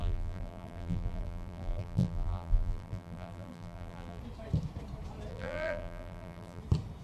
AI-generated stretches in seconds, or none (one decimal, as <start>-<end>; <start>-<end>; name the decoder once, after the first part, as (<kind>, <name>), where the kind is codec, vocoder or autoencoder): 0.0-4.2 (vocoder, BigVGAN v2); 5.3-6.6